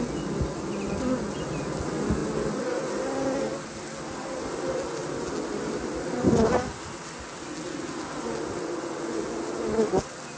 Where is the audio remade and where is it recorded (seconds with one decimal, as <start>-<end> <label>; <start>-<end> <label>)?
0.0-10.4 recorded